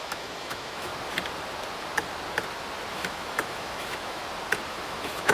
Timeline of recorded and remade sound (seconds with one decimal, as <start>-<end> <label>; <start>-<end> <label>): 0.0-0.9 remade; 0.9-2.9 recorded; 2.9-4.2 remade; 4.2-4.7 recorded; 4.7-5.3 remade